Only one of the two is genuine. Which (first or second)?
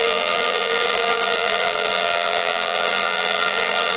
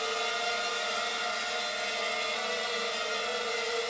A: second